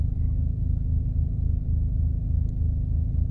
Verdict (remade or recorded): recorded